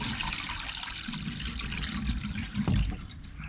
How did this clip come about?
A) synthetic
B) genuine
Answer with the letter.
B